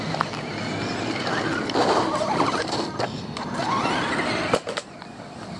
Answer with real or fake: real